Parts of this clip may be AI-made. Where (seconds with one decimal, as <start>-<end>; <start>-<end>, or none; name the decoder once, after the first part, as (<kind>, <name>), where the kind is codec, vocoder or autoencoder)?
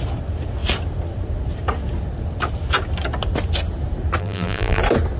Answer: 4.2-4.8 (vocoder, BigVGAN v2)